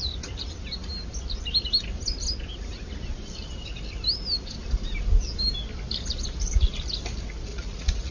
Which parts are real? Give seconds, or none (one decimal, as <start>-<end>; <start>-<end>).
0.0-7.5